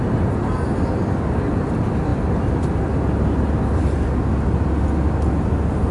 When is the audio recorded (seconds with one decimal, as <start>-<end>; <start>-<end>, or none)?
0.0-5.9